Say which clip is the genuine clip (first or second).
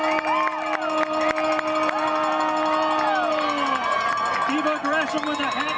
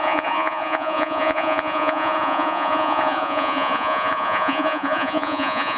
first